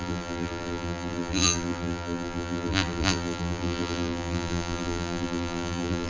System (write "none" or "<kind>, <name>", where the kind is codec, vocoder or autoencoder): vocoder, BigVGAN v2